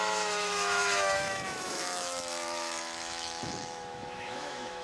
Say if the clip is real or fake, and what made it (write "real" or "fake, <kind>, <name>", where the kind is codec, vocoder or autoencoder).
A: fake, autoencoder, DAC-VAE